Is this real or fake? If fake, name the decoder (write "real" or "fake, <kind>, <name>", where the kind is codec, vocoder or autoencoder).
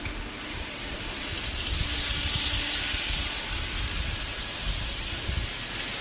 real